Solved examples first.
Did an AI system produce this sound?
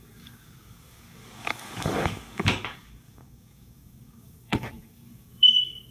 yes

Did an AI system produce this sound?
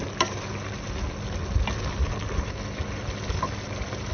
no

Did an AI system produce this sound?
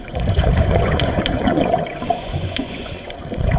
yes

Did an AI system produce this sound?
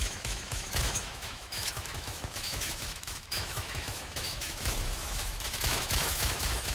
yes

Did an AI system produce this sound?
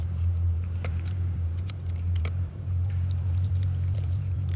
yes